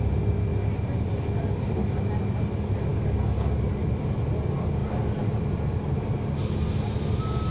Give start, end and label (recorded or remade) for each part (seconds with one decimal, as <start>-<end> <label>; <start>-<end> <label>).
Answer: 0.0-2.9 recorded; 2.9-3.7 remade; 3.7-7.5 recorded